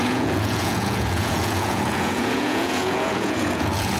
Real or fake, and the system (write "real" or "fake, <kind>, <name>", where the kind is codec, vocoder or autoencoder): fake, vocoder, Vocos